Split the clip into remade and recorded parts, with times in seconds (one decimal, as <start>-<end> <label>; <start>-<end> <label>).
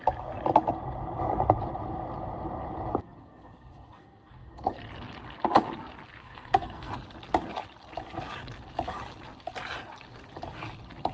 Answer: 0.0-3.0 recorded; 3.0-4.7 remade; 4.7-6.2 recorded; 6.2-6.9 remade; 6.9-11.1 recorded